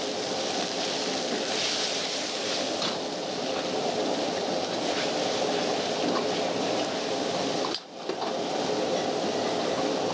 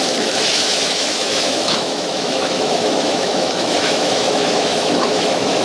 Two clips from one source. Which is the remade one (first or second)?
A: second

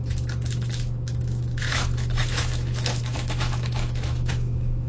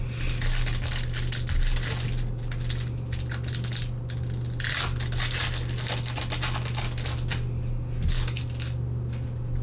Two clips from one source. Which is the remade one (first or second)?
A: first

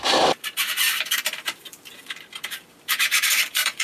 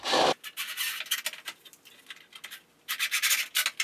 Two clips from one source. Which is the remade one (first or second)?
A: first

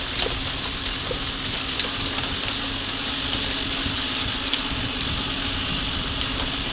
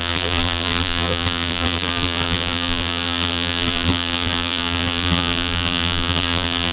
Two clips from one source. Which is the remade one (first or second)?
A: second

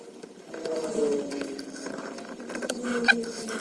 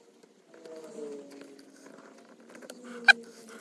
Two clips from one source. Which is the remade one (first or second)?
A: first